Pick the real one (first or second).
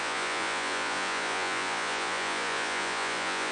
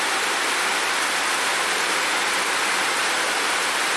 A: second